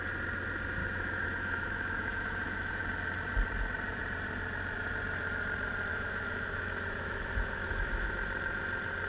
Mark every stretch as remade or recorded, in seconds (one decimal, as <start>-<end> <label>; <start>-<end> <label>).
0.0-0.8 recorded; 0.8-2.8 remade; 2.8-5.9 recorded; 5.9-8.1 remade; 8.1-9.1 recorded